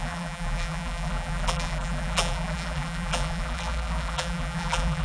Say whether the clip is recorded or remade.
remade